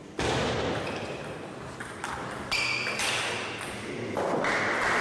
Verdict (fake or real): real